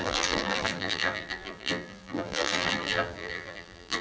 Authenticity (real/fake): fake